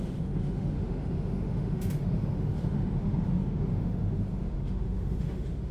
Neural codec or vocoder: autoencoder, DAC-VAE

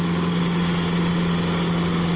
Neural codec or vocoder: none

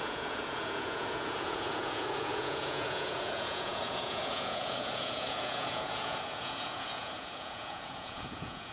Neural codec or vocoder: vocoder, Vocos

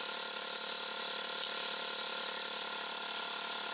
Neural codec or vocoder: none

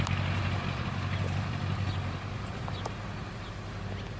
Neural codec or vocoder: none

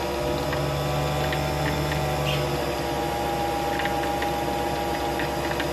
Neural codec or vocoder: none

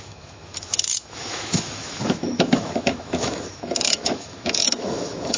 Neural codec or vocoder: autoencoder, DAC-VAE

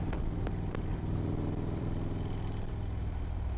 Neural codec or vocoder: vocoder, BigVGAN v2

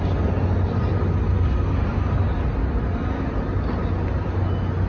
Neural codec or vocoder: none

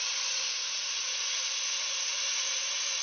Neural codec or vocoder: vocoder, Vocos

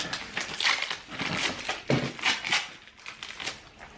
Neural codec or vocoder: none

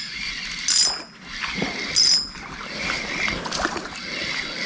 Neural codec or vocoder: none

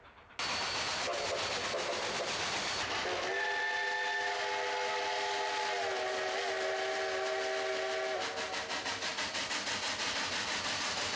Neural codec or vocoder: none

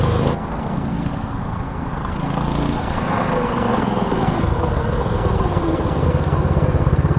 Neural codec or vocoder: codec, SNAC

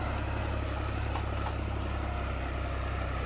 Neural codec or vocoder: none